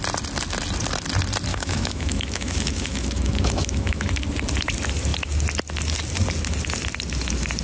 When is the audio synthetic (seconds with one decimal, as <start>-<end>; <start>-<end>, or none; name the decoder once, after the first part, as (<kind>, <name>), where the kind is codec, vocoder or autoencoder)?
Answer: 1.5-4.1 (autoencoder, DAC-VAE)